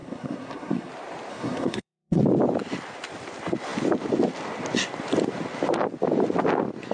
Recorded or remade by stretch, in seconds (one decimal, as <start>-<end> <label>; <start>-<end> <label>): 0.0-0.9 remade; 0.9-1.3 recorded; 1.3-2.2 remade; 2.2-6.9 recorded

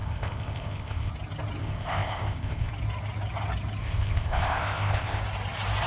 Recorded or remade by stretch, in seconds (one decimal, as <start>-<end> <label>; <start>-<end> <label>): 0.0-1.1 remade; 1.1-1.6 recorded; 1.6-2.7 remade; 2.7-3.8 recorded; 3.8-5.2 remade; 5.2-5.9 recorded